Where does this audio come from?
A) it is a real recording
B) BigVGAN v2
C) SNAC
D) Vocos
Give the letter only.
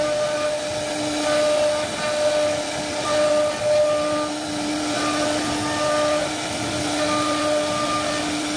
A